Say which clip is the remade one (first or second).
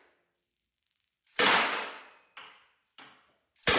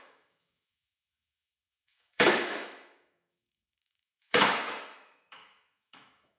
second